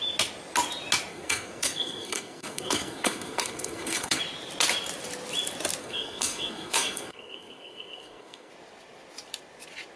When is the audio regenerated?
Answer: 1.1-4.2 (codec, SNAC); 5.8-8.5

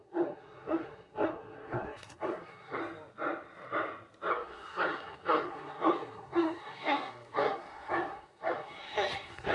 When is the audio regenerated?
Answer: 0.0-2.8 (codec, SNAC); 4.3-9.5

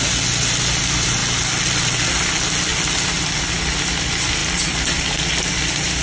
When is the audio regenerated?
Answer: none